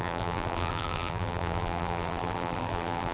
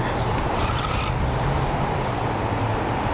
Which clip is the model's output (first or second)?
first